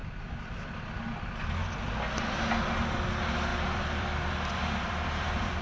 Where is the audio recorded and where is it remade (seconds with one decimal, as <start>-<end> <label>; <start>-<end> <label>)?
0.0-3.5 recorded; 3.5-5.6 remade